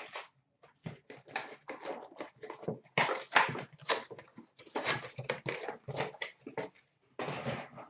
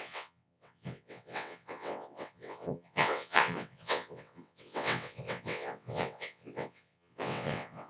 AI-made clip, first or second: second